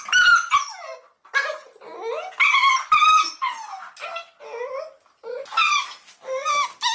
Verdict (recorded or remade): recorded